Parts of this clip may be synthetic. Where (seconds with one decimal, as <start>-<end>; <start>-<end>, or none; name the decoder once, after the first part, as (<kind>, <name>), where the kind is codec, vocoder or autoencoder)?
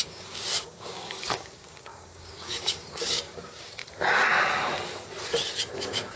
0.0-3.8 (codec, DAC); 5.8-6.2